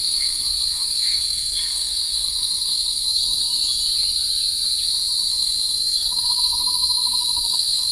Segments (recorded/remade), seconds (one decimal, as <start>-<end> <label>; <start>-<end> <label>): 0.0-3.5 remade; 3.5-5.3 recorded; 5.3-7.9 remade